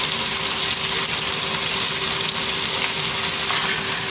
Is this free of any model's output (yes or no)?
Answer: yes